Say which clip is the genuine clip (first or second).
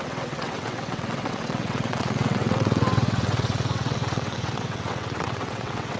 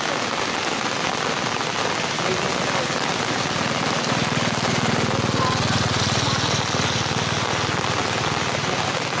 second